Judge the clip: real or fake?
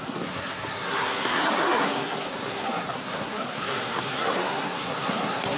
fake